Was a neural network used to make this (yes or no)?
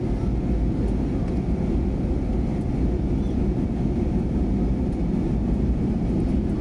no